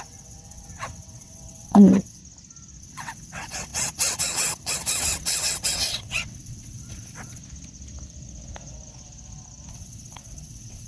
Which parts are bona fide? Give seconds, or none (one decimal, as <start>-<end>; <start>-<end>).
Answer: 2.2-2.8; 7.4-9.7